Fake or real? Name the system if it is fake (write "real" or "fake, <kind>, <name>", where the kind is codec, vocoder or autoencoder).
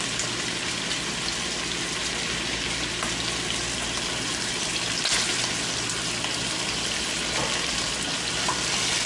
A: real